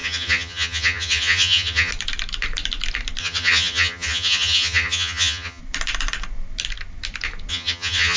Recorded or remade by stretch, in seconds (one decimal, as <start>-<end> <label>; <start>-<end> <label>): 0.0-1.9 remade; 1.9-3.2 recorded; 3.2-5.6 remade; 5.6-7.5 recorded; 7.5-8.2 remade